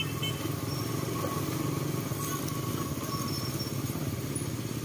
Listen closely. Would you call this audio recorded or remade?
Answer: recorded